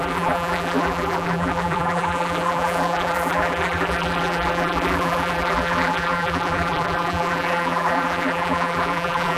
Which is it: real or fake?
fake